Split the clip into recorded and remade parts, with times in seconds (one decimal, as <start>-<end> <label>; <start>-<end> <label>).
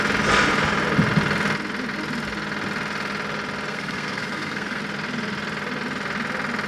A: 0.0-3.7 recorded; 3.7-4.8 remade; 4.8-6.7 recorded